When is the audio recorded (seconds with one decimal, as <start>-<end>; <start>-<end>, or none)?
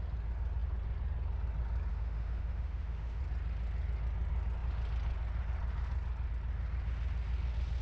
0.0-1.9; 3.2-7.8